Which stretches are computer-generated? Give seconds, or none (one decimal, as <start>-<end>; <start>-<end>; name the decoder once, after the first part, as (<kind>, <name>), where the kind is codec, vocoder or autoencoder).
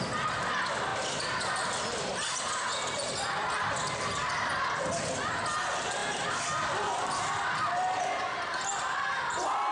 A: 0.9-1.4 (vocoder, BigVGAN v2); 2.1-3.6